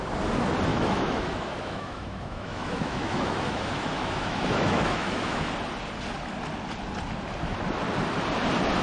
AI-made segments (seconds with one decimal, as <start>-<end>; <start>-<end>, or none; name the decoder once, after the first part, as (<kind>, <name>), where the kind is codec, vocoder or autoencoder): 0.7-5.5 (autoencoder, DAC-VAE)